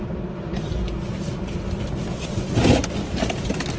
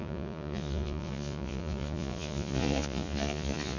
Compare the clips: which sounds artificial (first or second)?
second